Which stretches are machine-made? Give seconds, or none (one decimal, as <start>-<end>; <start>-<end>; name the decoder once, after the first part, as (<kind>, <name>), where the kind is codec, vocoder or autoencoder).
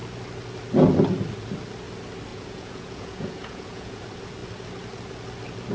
2.3-4.0 (vocoder, Vocos)